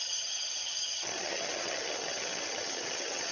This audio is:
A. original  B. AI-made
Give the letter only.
B